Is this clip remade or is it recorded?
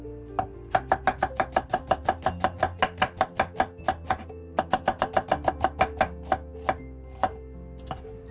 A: recorded